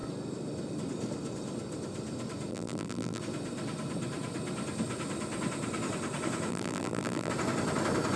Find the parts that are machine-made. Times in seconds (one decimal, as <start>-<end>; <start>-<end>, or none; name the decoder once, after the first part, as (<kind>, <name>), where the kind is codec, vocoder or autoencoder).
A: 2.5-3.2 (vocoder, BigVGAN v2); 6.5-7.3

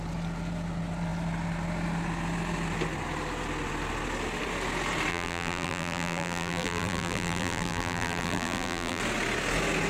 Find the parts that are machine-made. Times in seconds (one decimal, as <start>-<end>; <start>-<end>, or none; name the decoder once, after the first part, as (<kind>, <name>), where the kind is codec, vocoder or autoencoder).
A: 5.1-9.0 (vocoder, BigVGAN v2)

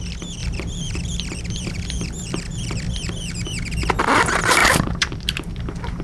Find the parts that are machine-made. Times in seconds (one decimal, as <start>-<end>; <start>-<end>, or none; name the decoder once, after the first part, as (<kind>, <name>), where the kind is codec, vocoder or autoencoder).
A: 0.4-4.0 (vocoder, BigVGAN v2); 4.6-6.0

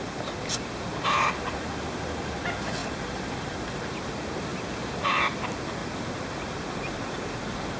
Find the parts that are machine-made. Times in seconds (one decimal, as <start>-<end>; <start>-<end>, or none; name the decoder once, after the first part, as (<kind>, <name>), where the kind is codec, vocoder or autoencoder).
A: 0.9-1.8 (vocoder, BigVGAN v2); 2.8-4.1; 5.8-7.8

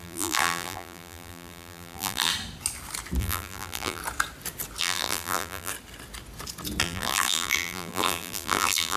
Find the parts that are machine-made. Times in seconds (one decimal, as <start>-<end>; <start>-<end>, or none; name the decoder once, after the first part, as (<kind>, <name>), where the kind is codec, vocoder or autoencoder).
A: 0.0-2.3 (vocoder, BigVGAN v2); 3.2-4.0; 4.8-5.7; 6.8-9.0

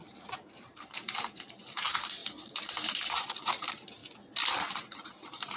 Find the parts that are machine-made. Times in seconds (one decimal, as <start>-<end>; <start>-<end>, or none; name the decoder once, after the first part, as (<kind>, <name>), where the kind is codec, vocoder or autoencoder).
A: 0.0-4.0 (vocoder, BigVGAN v2); 4.5-5.6